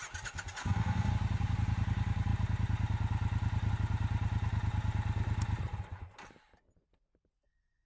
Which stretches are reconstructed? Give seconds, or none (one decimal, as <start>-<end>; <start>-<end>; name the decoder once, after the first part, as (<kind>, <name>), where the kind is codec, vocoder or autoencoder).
0.6-1.1 (codec, SNAC)